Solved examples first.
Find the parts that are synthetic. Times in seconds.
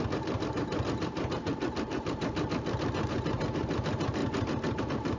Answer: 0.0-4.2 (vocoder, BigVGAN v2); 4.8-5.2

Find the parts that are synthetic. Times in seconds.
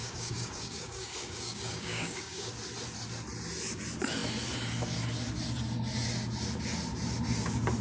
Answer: 0.0-2.5 (codec, DAC)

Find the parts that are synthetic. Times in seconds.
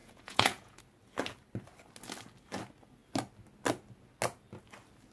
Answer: 0.0-0.8 (vocoder, Vocos)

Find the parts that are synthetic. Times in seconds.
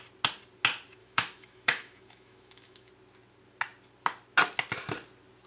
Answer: 1.0-2.9 (autoencoder, DAC-VAE)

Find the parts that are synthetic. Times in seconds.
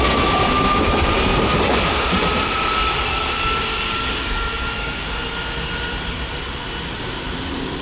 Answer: 1.3-2.1 (codec, DAC); 3.7-5.2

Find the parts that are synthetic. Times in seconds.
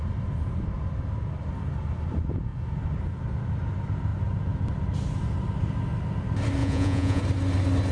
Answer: 6.6-7.2 (vocoder, Vocos)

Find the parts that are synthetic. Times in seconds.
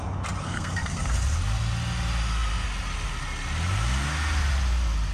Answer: 0.4-1.1 (codec, SNAC)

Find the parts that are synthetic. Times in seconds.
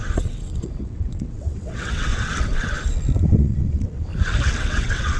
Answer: 0.0-2.1 (vocoder, WaveNeXt); 3.2-4.1; 4.6-5.2